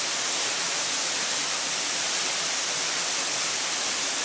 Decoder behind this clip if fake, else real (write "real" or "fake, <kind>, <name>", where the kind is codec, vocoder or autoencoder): real